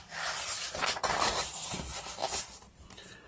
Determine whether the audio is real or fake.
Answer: fake